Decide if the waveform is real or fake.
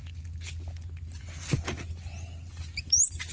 real